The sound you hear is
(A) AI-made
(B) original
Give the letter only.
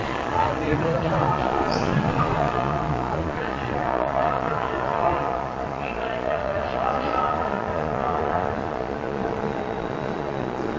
A